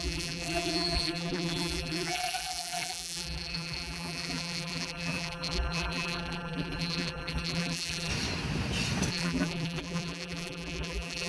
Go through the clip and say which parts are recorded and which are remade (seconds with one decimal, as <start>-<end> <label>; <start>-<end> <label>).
0.0-8.1 remade; 8.1-9.1 recorded; 9.1-11.3 remade